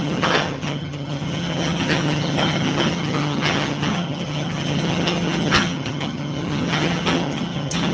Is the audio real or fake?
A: fake